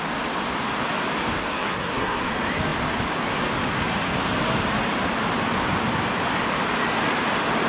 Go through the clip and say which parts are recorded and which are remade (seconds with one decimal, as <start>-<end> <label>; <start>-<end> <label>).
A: 0.0-1.4 recorded; 1.4-2.3 remade; 2.3-7.7 recorded